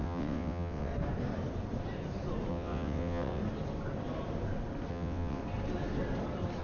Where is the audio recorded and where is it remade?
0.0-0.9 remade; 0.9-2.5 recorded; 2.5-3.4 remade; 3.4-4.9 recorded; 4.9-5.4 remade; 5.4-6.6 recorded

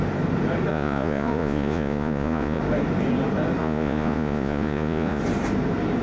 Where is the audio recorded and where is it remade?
0.0-0.7 recorded; 0.7-2.6 remade; 2.6-3.6 recorded; 3.6-5.2 remade; 5.2-6.0 recorded

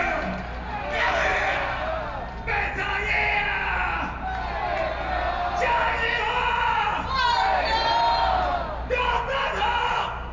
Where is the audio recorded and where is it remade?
0.0-10.3 recorded

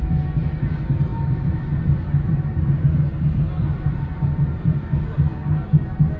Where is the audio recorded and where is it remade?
0.0-6.2 recorded

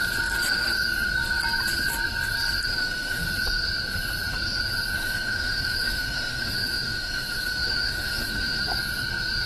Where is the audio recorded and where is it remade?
0.0-2.7 recorded; 2.7-3.3 remade; 3.3-5.0 recorded; 5.0-8.6 remade; 8.6-9.5 recorded

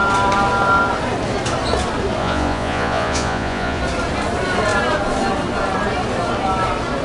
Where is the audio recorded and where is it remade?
0.0-2.2 recorded; 2.2-3.8 remade; 3.8-7.0 recorded

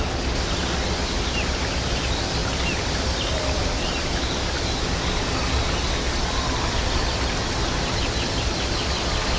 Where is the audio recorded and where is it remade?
0.0-9.4 recorded